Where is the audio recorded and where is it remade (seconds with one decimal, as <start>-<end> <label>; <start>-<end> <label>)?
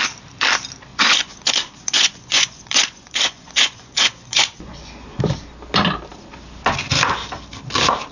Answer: 0.0-0.9 recorded; 0.9-5.2 remade; 5.2-8.1 recorded